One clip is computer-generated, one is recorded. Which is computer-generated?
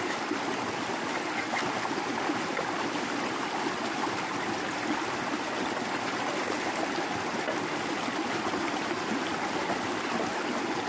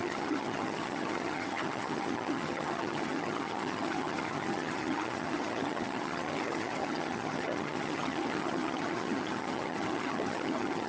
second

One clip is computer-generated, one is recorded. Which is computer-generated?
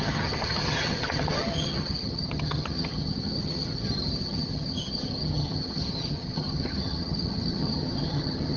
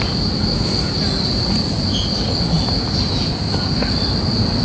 first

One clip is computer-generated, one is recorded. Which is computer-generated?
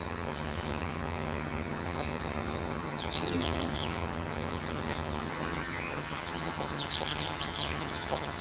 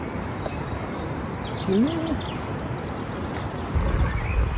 first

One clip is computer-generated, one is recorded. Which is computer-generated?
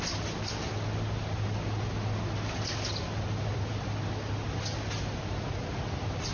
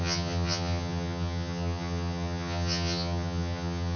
second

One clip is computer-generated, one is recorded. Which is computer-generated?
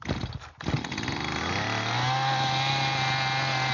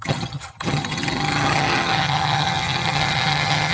second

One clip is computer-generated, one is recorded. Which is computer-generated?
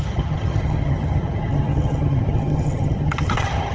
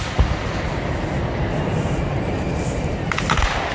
first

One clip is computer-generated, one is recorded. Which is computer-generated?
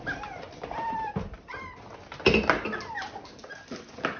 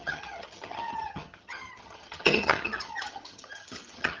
second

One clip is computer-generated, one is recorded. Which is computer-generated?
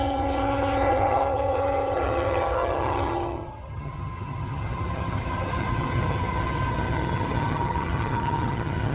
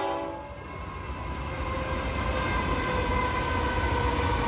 first